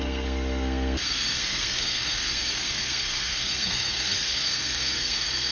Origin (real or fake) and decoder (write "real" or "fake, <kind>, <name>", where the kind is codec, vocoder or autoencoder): fake, codec, SNAC